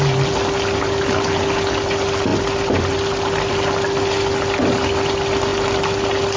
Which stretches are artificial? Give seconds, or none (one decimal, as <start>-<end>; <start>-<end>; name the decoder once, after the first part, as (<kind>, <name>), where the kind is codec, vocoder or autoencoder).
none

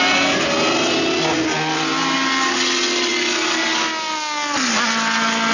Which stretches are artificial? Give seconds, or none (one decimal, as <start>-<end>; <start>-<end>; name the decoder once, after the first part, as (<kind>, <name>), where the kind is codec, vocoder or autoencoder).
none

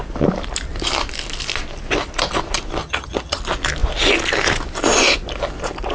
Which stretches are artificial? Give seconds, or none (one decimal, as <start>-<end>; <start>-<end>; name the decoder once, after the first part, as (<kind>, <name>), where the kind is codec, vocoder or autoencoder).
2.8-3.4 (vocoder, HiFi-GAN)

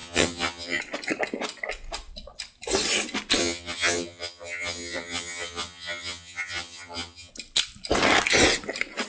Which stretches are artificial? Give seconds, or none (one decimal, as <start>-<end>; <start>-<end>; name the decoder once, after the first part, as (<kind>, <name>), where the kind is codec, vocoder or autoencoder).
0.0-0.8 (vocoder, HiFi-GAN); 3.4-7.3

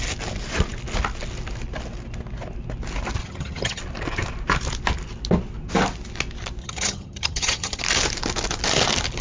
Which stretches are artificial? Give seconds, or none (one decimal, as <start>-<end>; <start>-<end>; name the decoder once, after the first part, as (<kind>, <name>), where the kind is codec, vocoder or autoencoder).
3.2-3.8 (vocoder, HiFi-GAN); 6.6-7.8